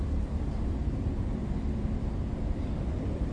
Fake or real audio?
fake